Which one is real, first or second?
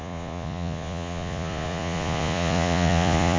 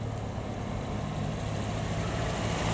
second